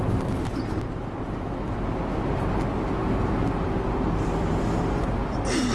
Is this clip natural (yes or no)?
yes